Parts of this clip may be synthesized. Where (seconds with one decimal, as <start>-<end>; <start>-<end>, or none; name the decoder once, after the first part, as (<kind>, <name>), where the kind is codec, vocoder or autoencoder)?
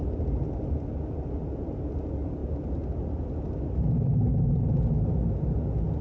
0.0-0.7 (vocoder, BigVGAN v2)